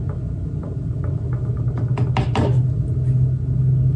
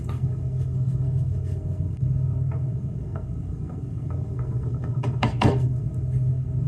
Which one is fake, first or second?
second